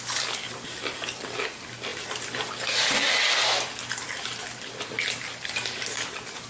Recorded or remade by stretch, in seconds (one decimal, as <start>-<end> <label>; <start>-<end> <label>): 0.0-6.5 recorded